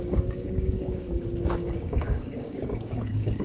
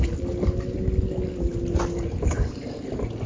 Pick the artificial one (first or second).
first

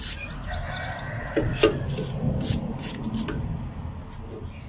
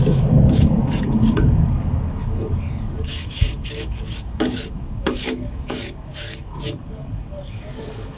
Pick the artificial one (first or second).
second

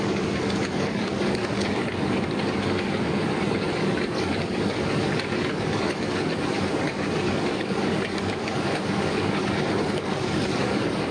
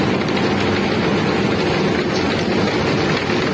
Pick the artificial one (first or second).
first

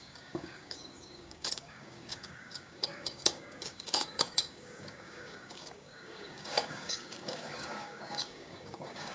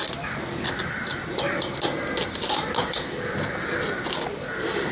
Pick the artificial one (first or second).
first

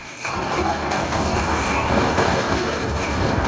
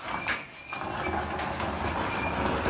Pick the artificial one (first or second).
first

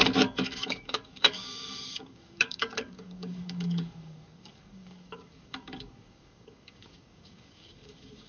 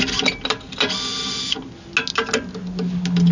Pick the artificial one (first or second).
first